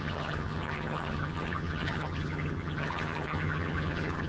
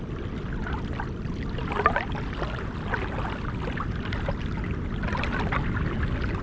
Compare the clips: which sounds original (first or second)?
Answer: second